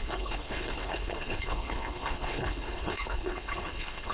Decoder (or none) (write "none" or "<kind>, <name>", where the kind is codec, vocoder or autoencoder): codec, HILCodec